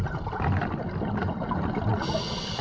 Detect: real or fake real